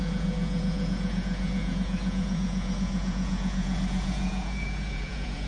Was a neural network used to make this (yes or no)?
yes